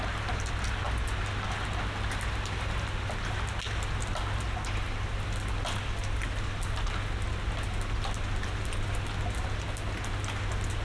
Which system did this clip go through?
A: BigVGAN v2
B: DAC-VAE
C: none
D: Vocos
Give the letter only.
C